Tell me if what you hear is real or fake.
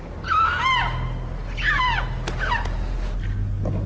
real